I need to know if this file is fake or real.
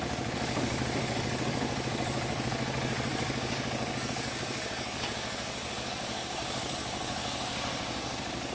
fake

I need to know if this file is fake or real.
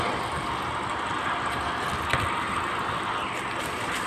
real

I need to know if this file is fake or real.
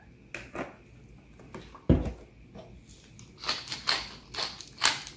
real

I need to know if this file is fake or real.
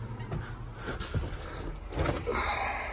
real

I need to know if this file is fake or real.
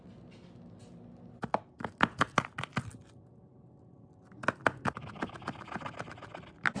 real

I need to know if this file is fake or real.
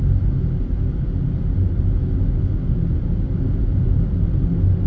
real